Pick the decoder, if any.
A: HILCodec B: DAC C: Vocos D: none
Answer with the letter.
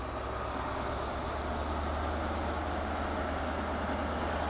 D